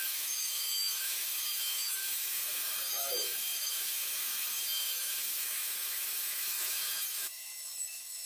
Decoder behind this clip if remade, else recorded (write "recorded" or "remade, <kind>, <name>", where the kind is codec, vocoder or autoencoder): remade, autoencoder, DAC-VAE